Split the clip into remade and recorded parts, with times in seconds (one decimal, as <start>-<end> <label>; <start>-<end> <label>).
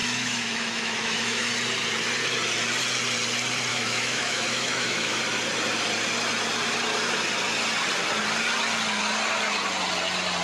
0.0-1.5 remade; 1.5-3.7 recorded; 3.7-5.2 remade; 5.2-10.4 recorded